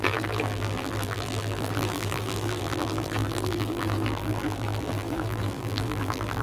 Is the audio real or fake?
fake